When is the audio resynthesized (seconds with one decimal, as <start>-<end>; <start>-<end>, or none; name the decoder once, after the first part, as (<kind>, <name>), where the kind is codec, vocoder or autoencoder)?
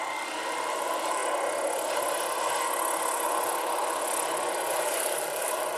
0.0-1.2 (vocoder, BigVGAN v2); 4.7-5.8